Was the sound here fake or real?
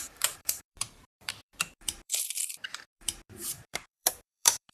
fake